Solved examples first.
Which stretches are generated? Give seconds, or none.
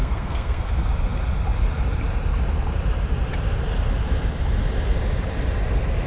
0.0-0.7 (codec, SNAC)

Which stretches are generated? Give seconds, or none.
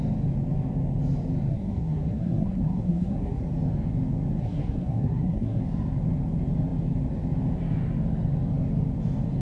1.5-3.4 (codec, SNAC); 4.4-5.6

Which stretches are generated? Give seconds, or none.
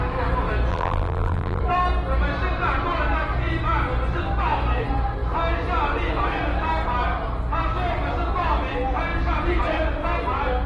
0.7-1.6 (vocoder, BigVGAN v2)